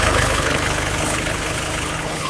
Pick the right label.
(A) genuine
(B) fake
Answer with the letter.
B